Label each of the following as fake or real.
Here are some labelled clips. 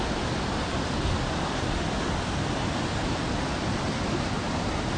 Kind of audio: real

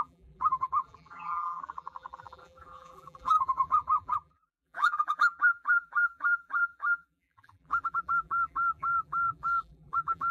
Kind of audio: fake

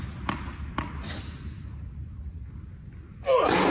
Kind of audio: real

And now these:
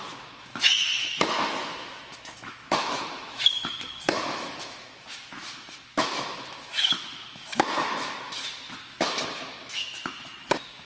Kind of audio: fake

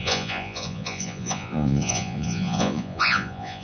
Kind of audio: fake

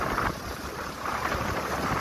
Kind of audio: fake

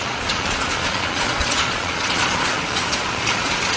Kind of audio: fake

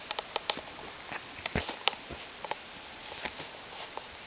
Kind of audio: fake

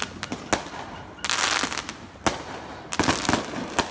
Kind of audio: real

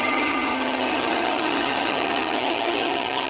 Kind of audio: fake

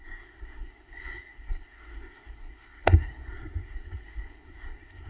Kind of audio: fake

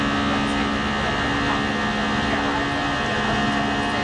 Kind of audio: real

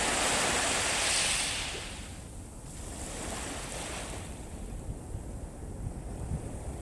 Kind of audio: real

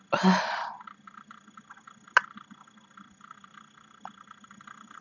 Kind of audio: real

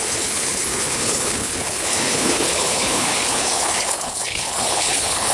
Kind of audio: fake